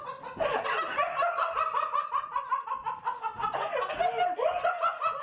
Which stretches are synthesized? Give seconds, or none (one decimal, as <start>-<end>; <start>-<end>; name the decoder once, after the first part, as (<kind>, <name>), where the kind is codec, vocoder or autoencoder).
none